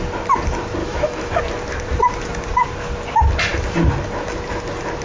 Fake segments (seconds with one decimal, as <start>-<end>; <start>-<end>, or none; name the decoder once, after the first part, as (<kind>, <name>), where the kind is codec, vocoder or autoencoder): 0.8-1.4 (autoencoder, DAC-VAE)

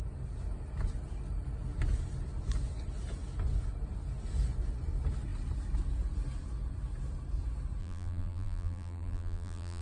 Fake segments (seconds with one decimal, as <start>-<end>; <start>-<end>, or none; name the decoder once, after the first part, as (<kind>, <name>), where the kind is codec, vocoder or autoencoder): 7.8-9.8 (vocoder, BigVGAN v2)

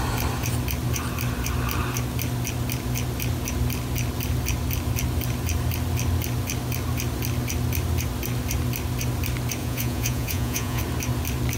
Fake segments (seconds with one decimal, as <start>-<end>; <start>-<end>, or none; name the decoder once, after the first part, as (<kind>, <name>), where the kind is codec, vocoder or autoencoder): 9.6-10.8 (vocoder, Vocos)

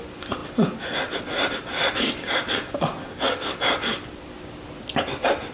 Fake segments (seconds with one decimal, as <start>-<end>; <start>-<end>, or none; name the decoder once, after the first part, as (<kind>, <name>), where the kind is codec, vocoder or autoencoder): none

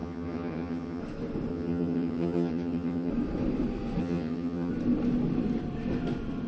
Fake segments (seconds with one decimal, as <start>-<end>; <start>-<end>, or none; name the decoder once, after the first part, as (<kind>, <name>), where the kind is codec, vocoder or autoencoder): 0.0-1.0 (vocoder, HiFi-GAN); 1.5-3.1; 4.0-4.7

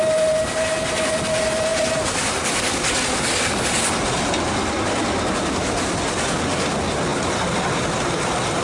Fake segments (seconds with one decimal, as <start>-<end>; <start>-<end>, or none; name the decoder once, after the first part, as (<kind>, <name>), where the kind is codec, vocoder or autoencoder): none